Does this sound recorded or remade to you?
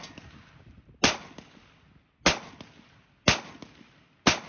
recorded